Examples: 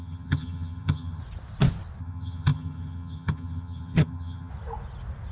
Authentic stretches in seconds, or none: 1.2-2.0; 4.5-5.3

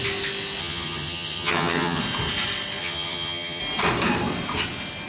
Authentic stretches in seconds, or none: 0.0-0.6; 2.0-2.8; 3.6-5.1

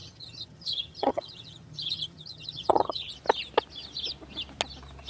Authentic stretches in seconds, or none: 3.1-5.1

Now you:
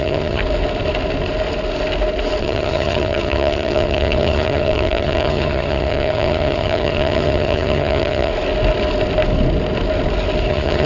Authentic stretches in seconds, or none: 0.4-2.4; 8.3-10.5

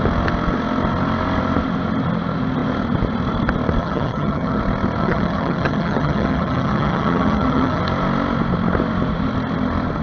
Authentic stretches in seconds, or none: 0.0-3.8; 4.6-5.0; 7.8-10.0

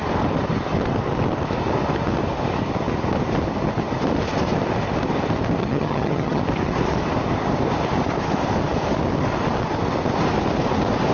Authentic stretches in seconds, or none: 0.0-5.6; 6.4-11.1

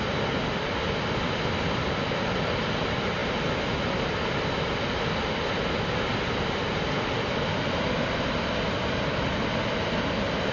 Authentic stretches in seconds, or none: 0.0-10.5

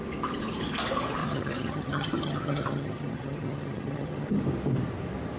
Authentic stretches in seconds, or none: 0.0-1.2; 4.4-5.4